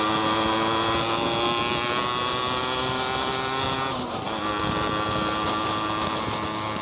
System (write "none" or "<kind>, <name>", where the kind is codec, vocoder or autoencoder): none